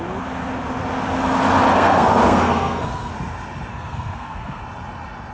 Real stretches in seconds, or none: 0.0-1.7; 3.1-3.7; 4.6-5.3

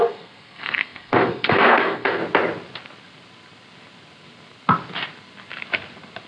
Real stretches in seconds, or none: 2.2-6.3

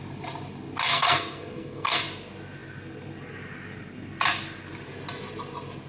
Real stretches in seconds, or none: 0.0-0.9; 2.0-5.9

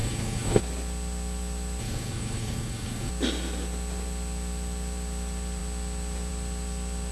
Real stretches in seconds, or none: 0.6-1.8; 3.1-7.1